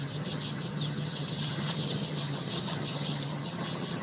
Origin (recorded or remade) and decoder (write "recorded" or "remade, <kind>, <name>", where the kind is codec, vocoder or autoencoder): remade, vocoder, HiFi-GAN